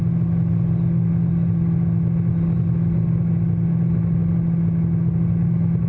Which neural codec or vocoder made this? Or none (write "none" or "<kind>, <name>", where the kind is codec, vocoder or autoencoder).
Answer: none